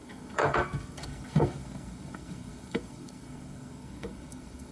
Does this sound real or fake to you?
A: fake